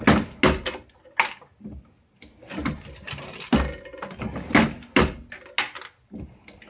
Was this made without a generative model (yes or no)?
yes